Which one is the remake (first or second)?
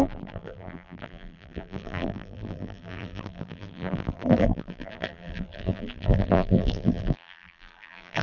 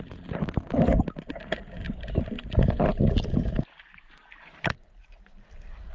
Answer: first